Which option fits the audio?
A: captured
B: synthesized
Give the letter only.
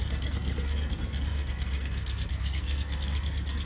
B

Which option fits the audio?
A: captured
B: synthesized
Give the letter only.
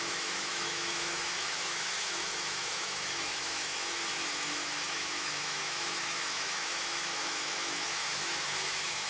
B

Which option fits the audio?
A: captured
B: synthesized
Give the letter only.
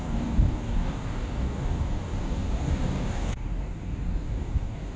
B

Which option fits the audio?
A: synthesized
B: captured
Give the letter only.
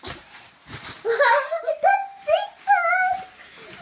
A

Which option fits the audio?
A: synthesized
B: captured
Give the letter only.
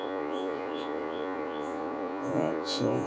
A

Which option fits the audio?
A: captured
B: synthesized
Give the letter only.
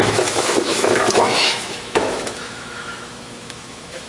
B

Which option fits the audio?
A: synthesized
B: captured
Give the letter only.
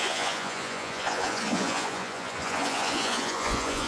A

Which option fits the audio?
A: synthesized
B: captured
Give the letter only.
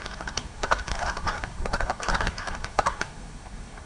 A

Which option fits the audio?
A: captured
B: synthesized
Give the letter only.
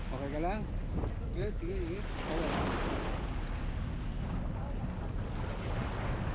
A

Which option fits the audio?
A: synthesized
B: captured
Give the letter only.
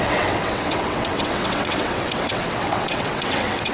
A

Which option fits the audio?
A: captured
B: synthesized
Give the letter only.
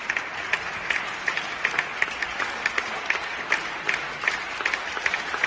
A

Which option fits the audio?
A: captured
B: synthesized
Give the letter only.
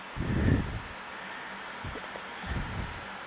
A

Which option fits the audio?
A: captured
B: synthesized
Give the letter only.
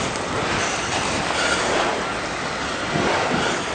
A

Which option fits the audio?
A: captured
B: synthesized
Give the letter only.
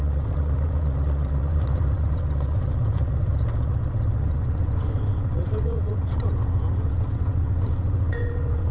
B